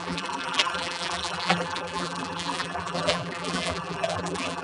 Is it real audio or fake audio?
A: fake